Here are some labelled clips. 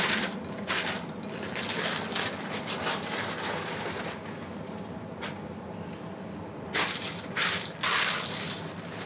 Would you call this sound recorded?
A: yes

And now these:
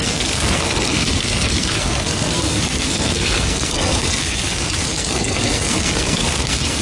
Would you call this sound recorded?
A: no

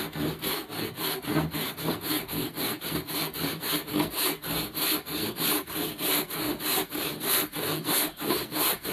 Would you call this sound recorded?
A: no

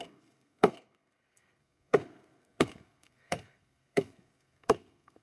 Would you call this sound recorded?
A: no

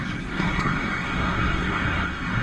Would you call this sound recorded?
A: no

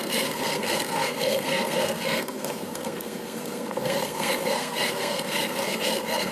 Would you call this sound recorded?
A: no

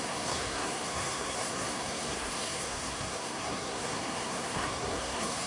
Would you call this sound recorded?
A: no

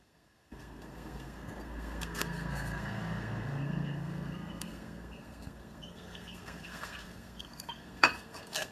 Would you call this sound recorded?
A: no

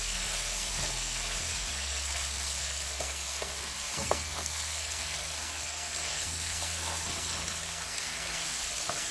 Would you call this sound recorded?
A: no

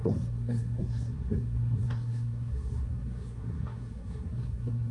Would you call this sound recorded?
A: no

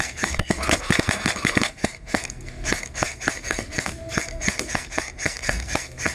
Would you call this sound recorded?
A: no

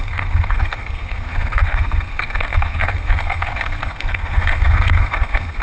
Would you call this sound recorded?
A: no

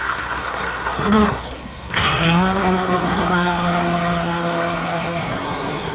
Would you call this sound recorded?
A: no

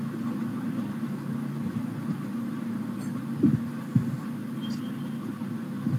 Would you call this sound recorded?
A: yes